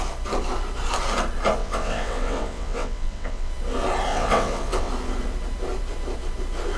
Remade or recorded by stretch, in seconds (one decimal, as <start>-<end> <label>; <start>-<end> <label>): 0.0-1.6 recorded; 1.6-3.5 remade; 3.5-4.1 recorded; 4.1-4.9 remade; 4.9-6.8 recorded